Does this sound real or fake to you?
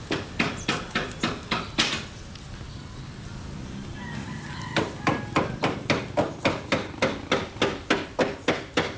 real